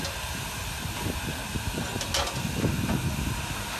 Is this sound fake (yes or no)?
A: no